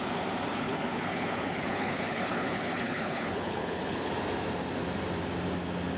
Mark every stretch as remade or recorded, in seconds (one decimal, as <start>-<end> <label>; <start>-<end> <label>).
0.0-0.5 recorded; 0.5-4.1 remade; 4.1-6.0 recorded